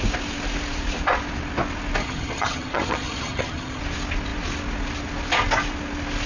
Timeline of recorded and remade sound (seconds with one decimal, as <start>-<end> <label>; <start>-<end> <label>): 0.0-2.0 recorded; 2.0-3.8 remade; 3.8-6.3 recorded

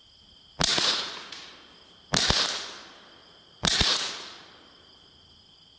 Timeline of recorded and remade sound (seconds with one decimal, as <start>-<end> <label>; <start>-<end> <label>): 0.0-0.7 recorded; 0.7-1.5 remade; 1.5-3.2 recorded; 3.2-4.5 remade; 4.5-5.8 recorded

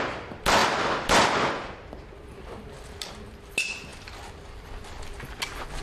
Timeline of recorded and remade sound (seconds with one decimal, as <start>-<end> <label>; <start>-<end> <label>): 0.0-5.8 recorded

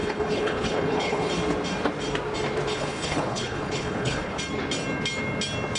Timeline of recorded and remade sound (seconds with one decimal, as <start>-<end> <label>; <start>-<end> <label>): 0.0-1.3 remade; 1.3-2.7 recorded; 2.7-4.4 remade; 4.4-5.8 recorded

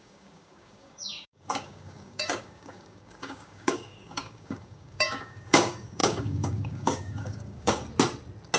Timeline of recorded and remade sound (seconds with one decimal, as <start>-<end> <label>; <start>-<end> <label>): 0.0-7.8 remade; 7.8-8.6 recorded

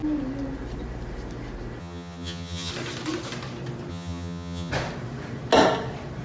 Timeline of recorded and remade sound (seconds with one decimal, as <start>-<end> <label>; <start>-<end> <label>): 0.0-1.8 recorded; 1.8-2.7 remade; 2.7-3.9 recorded; 3.9-4.7 remade; 4.7-6.2 recorded

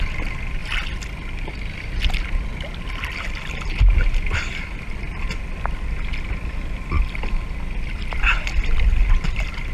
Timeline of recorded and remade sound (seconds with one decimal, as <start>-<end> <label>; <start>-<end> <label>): 0.0-9.7 recorded